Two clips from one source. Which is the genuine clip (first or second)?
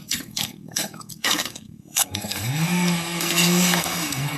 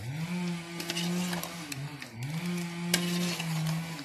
second